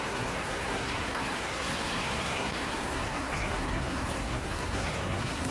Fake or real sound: fake